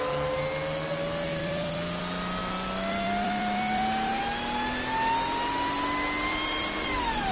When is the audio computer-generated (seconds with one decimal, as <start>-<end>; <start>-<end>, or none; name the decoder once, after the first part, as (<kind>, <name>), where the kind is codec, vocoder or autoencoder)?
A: 1.3-2.0 (vocoder, BigVGAN v2); 2.4-4.2; 6.3-7.3